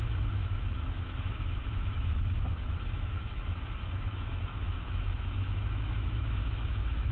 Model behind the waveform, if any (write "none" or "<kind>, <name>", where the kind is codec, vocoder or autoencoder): autoencoder, DAC-VAE